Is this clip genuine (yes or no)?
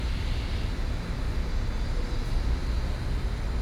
yes